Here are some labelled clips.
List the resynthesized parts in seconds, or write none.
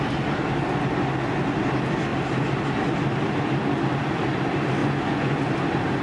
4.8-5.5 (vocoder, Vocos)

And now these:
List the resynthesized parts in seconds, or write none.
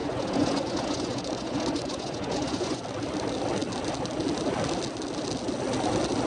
0.0-2.8 (vocoder, Vocos)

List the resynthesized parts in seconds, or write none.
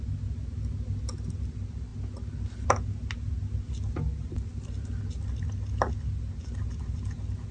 none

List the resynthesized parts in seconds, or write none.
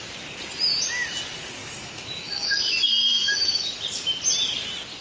1.6-3.7 (autoencoder, DAC-VAE)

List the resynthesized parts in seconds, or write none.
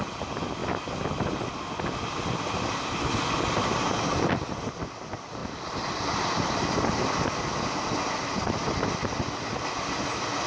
none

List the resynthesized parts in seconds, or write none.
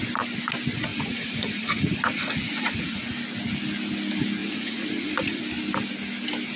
0.9-3.1 (vocoder, Vocos); 4.4-5.4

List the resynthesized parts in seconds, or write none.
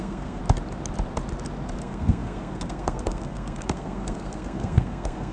0.0-0.4 (codec, SNAC); 1.8-5.3